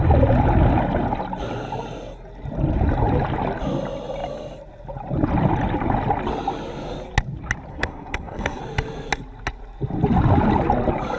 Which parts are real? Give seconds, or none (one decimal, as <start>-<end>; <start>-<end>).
0.0-7.7; 8.6-11.2